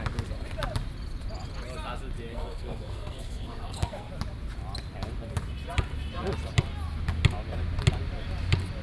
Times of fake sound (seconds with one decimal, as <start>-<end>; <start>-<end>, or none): 2.3-4.1